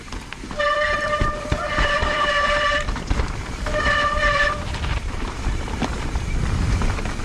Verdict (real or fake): fake